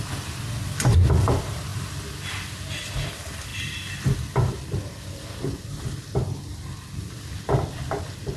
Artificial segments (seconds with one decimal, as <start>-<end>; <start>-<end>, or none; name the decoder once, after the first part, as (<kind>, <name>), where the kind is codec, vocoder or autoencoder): 0.0-1.7 (vocoder, BigVGAN v2); 2.8-8.4